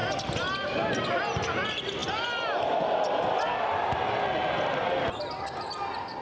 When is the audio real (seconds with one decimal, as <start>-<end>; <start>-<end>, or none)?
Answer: 0.0-6.2